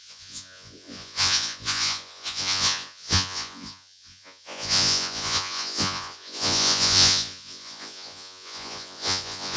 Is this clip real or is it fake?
fake